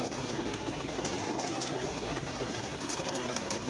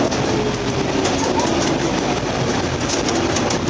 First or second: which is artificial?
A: first